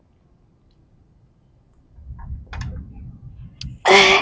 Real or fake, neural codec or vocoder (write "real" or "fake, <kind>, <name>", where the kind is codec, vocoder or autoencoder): real